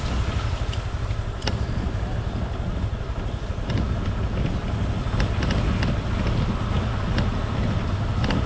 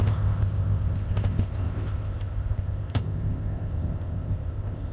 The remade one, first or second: second